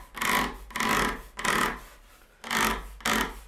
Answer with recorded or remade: recorded